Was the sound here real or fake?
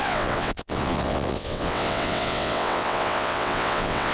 fake